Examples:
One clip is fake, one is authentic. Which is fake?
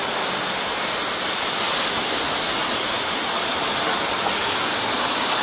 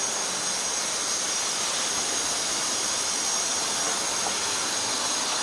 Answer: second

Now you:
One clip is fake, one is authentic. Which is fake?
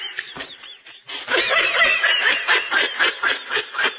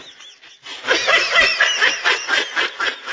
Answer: first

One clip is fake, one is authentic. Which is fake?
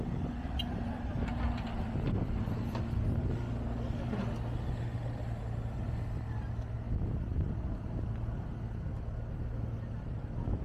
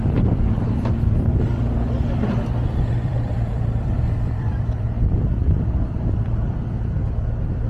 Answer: second